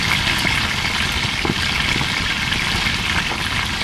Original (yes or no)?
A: yes